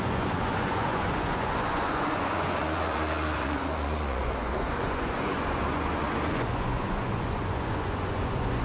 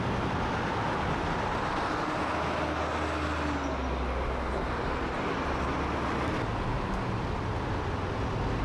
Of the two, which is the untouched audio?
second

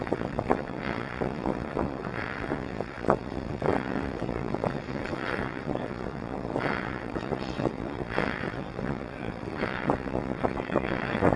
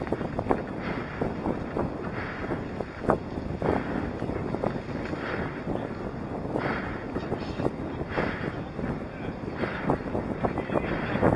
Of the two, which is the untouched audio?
second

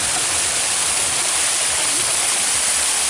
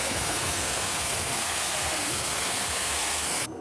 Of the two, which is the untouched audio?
first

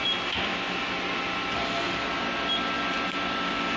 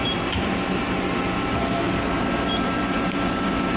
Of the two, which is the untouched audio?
first